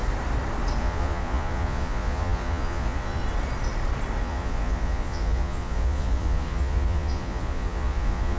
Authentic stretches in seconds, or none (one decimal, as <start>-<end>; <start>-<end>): 0.0-0.8; 3.2-4.2